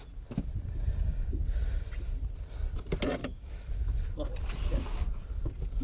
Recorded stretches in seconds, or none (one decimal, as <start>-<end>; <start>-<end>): 0.0-3.2; 4.0-5.8